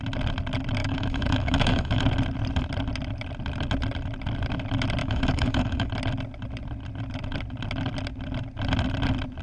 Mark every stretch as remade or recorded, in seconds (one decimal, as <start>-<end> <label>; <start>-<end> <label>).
0.0-0.8 recorded; 0.8-2.0 remade; 2.0-5.0 recorded; 5.0-5.9 remade; 5.9-9.4 recorded